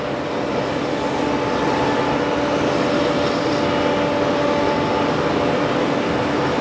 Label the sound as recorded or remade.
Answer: recorded